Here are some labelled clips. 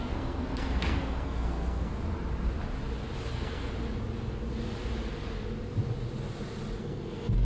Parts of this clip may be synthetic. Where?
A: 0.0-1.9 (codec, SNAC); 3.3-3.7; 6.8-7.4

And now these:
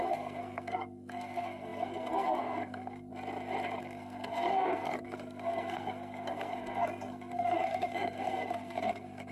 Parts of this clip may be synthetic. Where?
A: 0.0-3.1 (codec, SNAC); 3.8-9.3

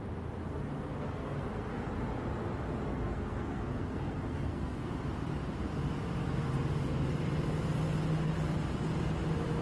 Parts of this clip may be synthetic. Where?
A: 0.4-1.9 (codec, SNAC); 2.9-4.9

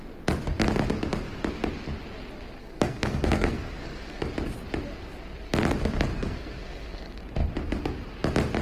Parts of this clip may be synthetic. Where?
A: 2.6-4.2 (codec, SNAC); 6.1-7.2

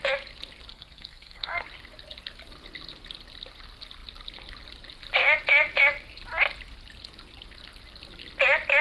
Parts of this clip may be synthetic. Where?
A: 0.7-1.6 (codec, SNAC)

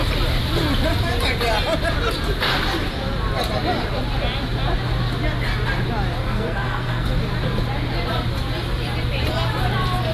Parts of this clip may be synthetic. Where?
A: 6.2-7.2 (codec, SNAC)